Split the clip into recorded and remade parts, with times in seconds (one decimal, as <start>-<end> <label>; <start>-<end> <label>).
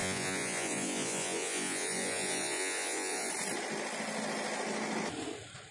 0.0-3.3 remade; 3.3-5.7 recorded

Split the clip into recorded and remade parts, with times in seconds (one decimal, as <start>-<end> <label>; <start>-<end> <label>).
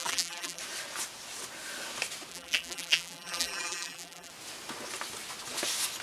0.0-0.6 remade; 0.6-2.3 recorded; 2.3-4.3 remade; 4.3-6.0 recorded